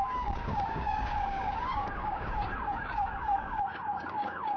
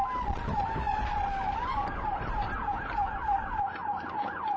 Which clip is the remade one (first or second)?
first